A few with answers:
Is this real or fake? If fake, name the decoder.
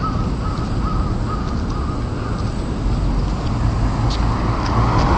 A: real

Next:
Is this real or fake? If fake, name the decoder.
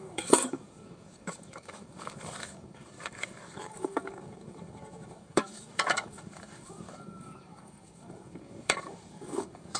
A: fake, codec, DAC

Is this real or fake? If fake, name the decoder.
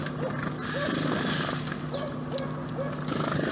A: real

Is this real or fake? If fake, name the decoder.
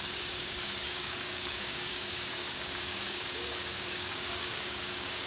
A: fake, codec, DAC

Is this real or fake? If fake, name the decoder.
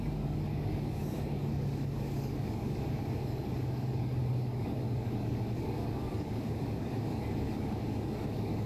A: fake, codec, DAC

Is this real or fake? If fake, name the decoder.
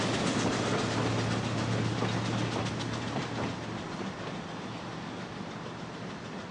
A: real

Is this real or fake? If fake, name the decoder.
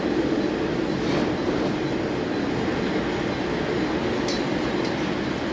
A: real